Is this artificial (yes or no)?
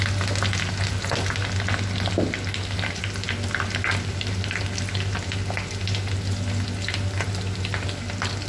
no